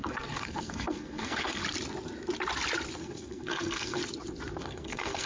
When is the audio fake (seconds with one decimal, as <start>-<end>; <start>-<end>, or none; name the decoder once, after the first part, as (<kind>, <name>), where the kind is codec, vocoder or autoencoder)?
0.0-1.6 (codec, SNAC); 3.0-4.0; 4.6-5.3